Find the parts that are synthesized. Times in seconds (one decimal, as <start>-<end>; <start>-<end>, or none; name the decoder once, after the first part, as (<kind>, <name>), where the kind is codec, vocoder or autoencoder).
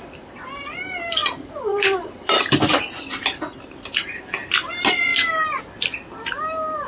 1.2-4.2 (vocoder, BigVGAN v2)